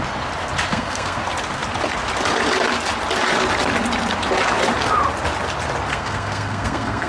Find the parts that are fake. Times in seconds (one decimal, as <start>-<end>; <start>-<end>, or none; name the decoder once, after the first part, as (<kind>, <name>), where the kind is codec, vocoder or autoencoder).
0.7-1.2 (codec, SNAC); 5.9-7.1